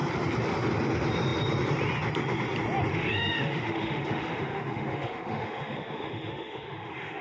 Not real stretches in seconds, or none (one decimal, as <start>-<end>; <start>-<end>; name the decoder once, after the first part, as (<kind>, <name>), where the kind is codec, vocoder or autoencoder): 2.9-7.2 (autoencoder, DAC-VAE)